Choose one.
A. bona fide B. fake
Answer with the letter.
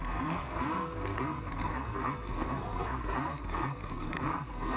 B